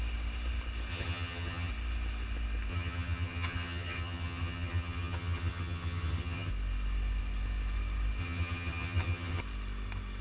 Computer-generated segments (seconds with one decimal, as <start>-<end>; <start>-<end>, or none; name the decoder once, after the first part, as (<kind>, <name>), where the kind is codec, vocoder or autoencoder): 0.9-1.7 (vocoder, HiFi-GAN); 2.7-6.5; 8.2-9.4